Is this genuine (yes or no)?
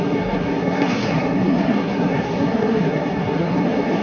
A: no